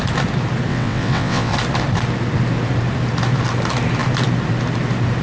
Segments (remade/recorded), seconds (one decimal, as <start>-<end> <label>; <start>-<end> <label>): 0.0-0.7 recorded; 0.7-1.5 remade; 1.5-5.2 recorded